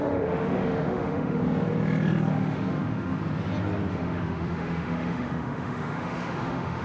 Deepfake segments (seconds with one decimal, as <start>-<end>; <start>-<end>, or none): 0.0-1.4; 2.3-3.2; 3.9-6.8